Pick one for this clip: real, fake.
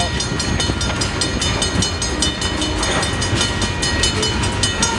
real